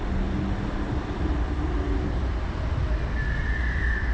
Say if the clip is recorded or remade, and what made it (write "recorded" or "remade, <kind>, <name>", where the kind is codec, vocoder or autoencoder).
recorded